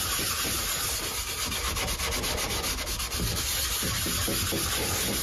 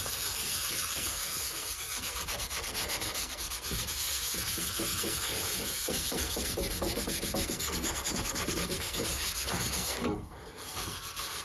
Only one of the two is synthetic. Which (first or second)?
second